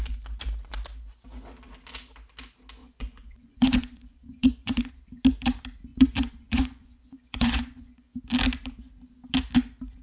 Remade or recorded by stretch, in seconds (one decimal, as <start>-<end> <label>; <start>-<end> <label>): 0.0-2.8 recorded; 2.8-4.9 remade; 4.9-5.9 recorded; 5.9-8.2 remade; 8.2-10.0 recorded